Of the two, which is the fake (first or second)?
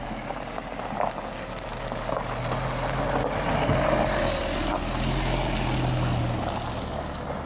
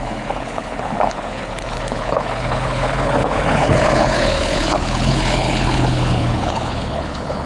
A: second